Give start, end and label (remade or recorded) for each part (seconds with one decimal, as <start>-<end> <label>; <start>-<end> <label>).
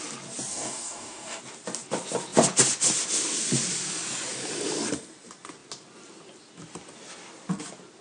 0.0-0.5 recorded; 0.5-1.4 remade; 1.4-8.0 recorded